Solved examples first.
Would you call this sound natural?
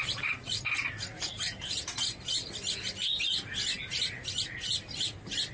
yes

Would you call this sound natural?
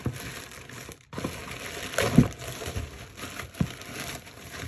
yes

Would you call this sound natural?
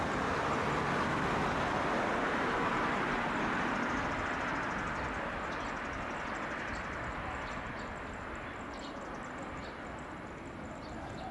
yes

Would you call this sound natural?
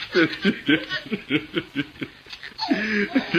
yes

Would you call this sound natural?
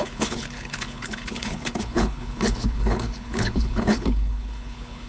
no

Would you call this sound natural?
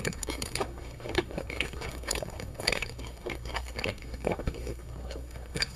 no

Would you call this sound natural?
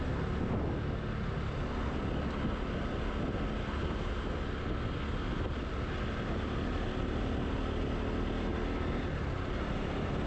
yes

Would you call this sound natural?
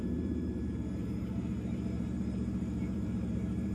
no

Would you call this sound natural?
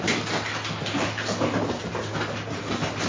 yes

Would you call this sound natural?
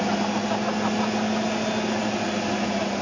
yes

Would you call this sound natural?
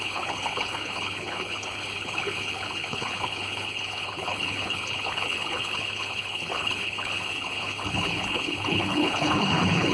no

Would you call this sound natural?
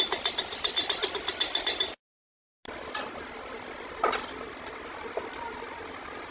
yes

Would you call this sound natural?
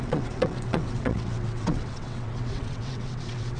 no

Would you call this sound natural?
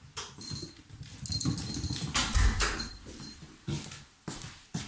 yes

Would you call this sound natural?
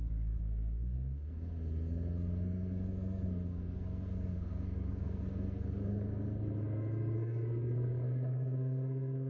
no